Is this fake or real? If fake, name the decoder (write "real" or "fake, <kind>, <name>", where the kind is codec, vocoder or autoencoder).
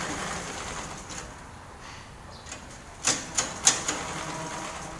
real